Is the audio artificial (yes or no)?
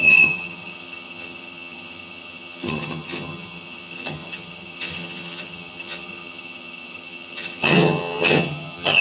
yes